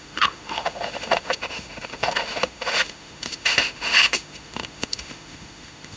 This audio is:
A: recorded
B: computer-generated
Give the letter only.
B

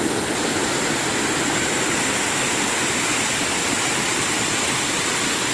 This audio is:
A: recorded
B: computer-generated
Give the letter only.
A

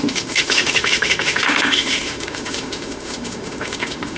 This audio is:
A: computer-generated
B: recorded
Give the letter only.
A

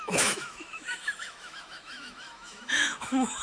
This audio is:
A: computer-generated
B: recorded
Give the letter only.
A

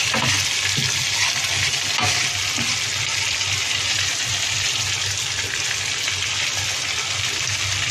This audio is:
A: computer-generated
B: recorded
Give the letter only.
B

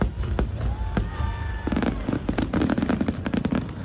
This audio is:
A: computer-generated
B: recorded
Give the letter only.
B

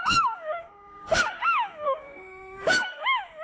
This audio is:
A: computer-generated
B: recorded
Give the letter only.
A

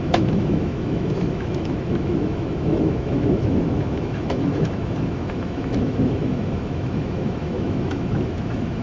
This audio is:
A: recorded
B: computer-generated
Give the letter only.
B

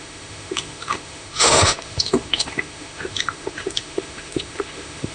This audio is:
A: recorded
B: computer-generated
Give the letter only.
B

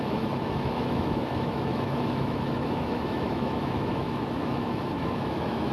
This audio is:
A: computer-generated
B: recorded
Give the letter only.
A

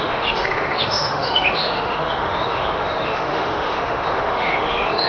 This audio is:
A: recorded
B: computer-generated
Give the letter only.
B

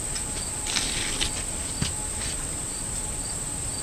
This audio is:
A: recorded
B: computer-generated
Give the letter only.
A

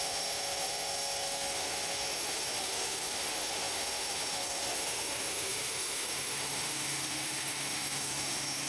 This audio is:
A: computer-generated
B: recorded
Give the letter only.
A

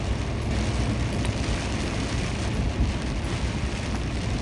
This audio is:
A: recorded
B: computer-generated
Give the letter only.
A